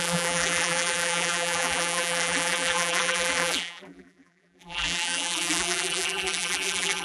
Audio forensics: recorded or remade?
remade